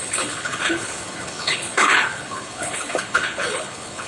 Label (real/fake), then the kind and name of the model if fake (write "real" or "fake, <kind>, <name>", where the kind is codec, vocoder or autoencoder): fake, codec, HILCodec